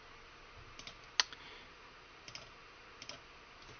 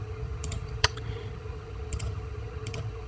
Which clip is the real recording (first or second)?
first